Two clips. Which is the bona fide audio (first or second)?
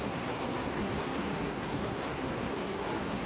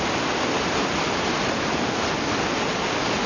second